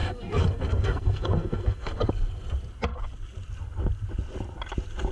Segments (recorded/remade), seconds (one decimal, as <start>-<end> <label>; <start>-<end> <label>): 0.0-2.1 remade; 2.1-5.1 recorded